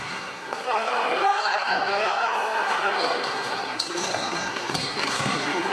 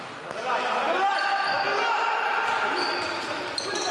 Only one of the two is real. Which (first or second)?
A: second